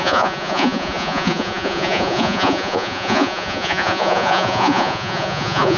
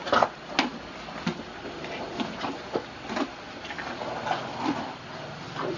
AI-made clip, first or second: first